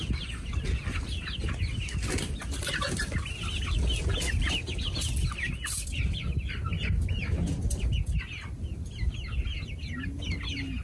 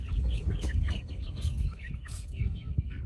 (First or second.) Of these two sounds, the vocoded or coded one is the second